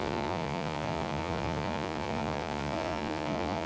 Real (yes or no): no